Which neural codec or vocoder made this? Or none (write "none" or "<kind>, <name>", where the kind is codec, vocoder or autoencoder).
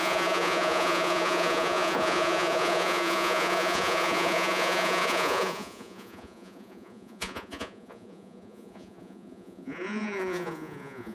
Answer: vocoder, Vocos